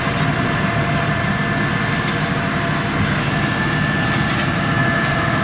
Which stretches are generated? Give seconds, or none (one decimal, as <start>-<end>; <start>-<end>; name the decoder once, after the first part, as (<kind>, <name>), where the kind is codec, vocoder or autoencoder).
0.0-1.4 (vocoder, BigVGAN v2); 4.3-5.4